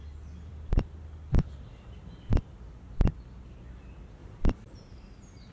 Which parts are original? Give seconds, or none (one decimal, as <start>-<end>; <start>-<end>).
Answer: 0.0-4.2